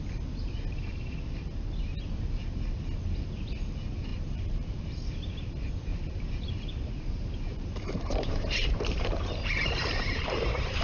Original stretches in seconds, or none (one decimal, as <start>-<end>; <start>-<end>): 0.0-4.1; 4.9-5.9

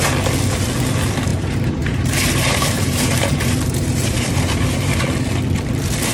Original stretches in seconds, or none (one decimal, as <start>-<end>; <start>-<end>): 0.0-1.3; 5.0-6.1

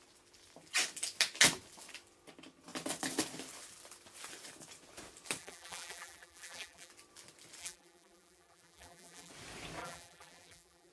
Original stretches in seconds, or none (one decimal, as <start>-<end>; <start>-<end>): 0.0-5.4; 6.9-7.6; 9.3-9.8